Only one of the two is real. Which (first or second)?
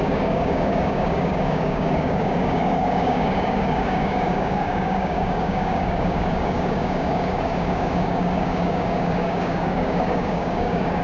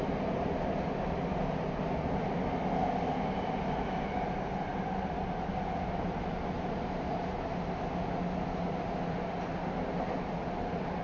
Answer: second